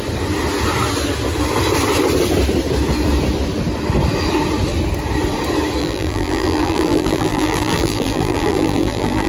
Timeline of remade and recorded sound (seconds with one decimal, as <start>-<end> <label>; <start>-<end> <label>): 0.0-5.8 recorded; 5.8-9.3 remade

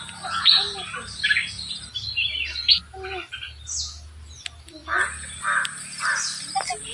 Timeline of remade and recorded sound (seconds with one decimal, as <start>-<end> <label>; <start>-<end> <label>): 0.0-2.2 recorded; 2.2-2.9 remade; 2.9-6.9 recorded

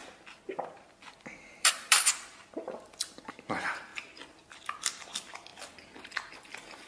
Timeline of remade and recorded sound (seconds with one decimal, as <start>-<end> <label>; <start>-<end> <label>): 0.0-3.9 remade; 3.9-4.9 recorded; 4.9-5.5 remade; 5.5-6.9 recorded

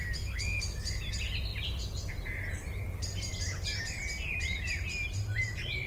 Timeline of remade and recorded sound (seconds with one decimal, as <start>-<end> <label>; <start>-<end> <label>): 0.0-1.5 recorded; 1.5-3.3 remade; 3.3-4.5 recorded; 4.5-5.2 remade; 5.2-5.9 recorded

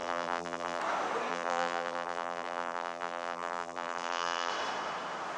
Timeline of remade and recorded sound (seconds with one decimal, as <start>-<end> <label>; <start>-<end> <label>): 0.0-0.8 remade; 0.8-1.3 recorded; 1.3-4.5 remade; 4.5-5.4 recorded

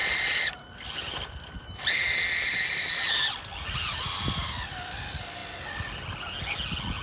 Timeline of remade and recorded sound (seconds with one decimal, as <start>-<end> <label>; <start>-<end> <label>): 0.0-4.2 remade; 4.2-7.0 recorded

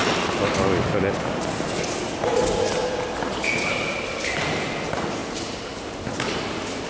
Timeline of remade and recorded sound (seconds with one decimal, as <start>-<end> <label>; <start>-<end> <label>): 0.0-5.2 recorded; 5.2-6.0 remade; 6.0-6.9 recorded